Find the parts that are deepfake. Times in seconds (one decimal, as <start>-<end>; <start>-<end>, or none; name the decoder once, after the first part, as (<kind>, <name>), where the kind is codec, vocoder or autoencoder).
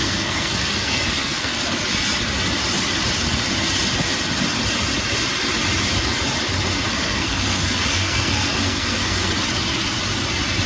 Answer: 0.0-1.5 (codec, SNAC); 6.9-9.3